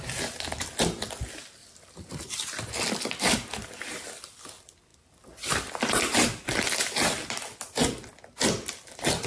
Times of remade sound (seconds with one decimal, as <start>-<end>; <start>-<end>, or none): none